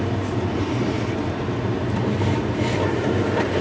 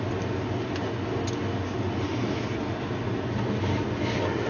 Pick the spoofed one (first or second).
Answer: first